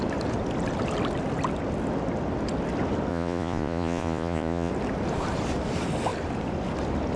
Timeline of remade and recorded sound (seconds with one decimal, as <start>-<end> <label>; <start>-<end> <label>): 0.0-3.1 recorded; 3.1-4.7 remade; 4.7-7.2 recorded